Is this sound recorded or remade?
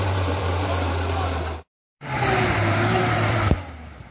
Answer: remade